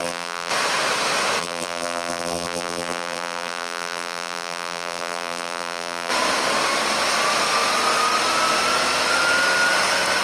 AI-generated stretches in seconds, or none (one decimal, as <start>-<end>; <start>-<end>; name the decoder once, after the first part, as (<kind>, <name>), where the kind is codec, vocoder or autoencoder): 0.0-0.5 (vocoder, BigVGAN v2); 1.4-6.1